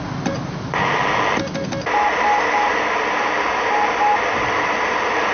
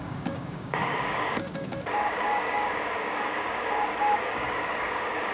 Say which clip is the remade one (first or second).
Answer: second